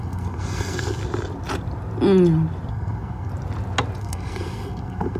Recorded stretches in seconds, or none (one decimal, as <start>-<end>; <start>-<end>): 1.0-2.7; 3.3-4.0